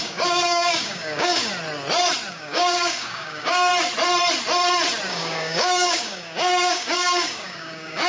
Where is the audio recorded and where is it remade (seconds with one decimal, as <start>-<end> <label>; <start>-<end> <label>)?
0.0-1.5 remade; 1.5-2.3 recorded; 2.3-3.7 remade; 3.7-5.1 recorded; 5.1-8.1 remade